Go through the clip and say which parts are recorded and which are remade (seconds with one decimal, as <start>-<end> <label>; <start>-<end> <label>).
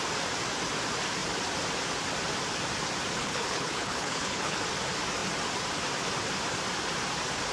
0.0-3.2 recorded; 3.2-4.6 remade; 4.6-7.5 recorded